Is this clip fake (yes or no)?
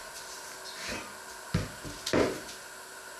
no